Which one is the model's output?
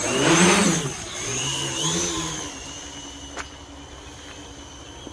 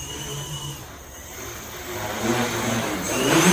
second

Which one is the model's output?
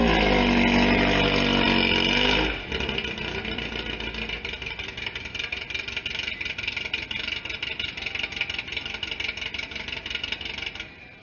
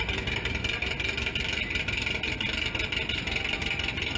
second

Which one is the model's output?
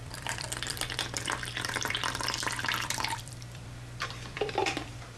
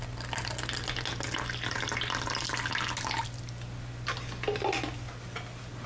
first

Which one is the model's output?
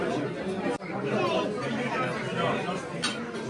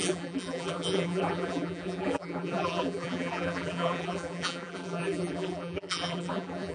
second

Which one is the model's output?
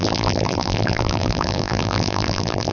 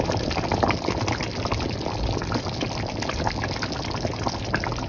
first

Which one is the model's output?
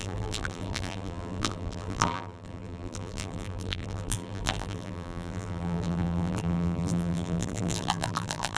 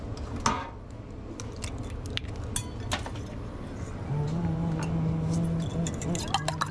first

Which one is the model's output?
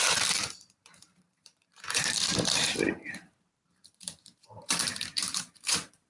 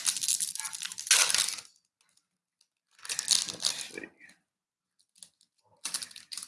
first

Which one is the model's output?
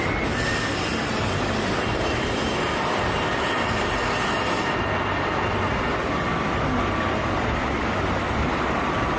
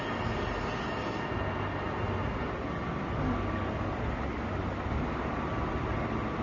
first